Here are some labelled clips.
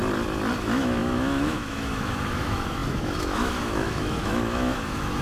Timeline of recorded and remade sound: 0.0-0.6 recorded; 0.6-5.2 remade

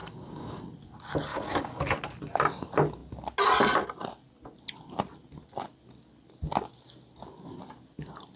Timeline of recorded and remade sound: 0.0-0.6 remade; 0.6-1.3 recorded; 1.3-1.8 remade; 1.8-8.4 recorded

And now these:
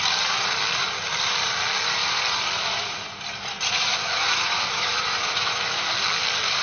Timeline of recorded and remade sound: 0.0-4.0 recorded; 4.0-5.9 remade; 5.9-6.6 recorded

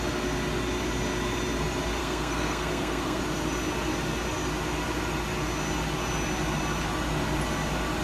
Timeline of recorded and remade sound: 0.0-2.0 recorded; 2.0-3.2 remade; 3.2-8.0 recorded

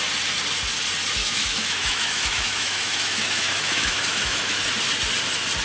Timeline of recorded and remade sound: 0.0-1.2 recorded; 1.2-4.6 remade; 4.6-5.6 recorded

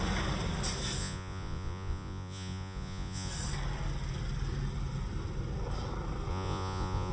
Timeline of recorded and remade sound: 0.0-1.0 recorded; 1.0-3.3 remade; 3.3-6.3 recorded; 6.3-7.1 remade

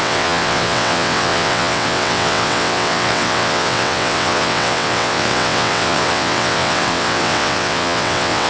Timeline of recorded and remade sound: 0.0-8.5 remade